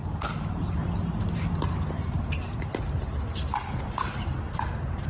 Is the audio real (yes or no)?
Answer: yes